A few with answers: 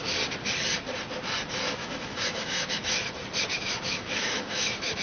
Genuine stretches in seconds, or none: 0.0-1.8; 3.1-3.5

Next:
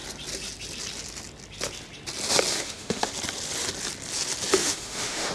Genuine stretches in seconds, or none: 0.0-2.5; 3.1-4.6

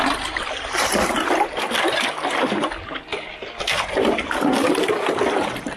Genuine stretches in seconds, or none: 0.0-5.8

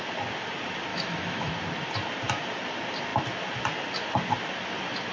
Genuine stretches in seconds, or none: 0.0-0.9; 1.5-5.1

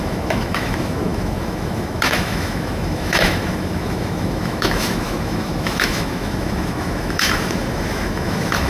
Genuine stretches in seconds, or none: none

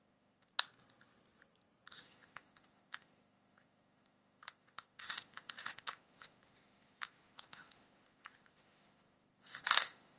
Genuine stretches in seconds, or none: 0.5-1.9

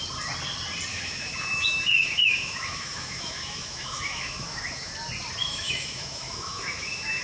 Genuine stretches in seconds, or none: 0.0-0.9; 4.9-5.4